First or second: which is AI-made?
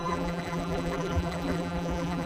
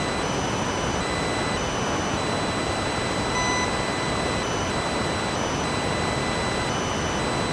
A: first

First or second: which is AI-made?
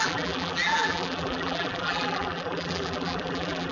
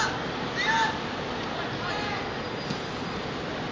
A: first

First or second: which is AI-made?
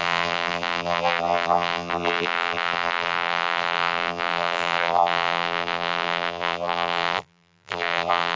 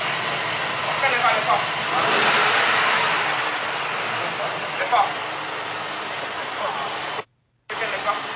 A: first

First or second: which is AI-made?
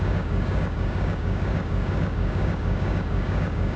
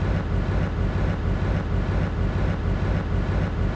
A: first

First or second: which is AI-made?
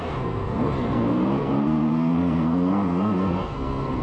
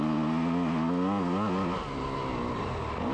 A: first